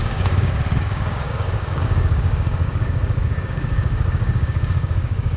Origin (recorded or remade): remade